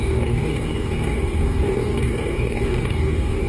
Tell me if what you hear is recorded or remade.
remade